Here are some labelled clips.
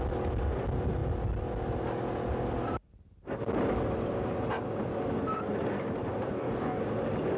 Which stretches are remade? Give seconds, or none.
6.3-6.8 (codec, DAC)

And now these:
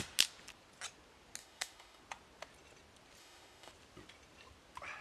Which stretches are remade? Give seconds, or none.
1.4-2.0 (autoencoder, DAC-VAE); 3.2-3.7